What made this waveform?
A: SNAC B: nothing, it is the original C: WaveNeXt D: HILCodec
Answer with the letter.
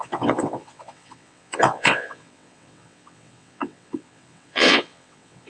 C